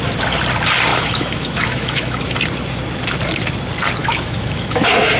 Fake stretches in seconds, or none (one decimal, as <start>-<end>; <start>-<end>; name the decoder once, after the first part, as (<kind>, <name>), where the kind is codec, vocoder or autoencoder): 0.9-2.3 (autoencoder, DAC-VAE); 4.0-4.8